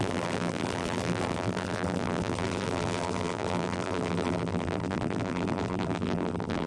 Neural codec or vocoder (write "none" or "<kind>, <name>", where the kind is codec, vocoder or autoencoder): vocoder, BigVGAN v2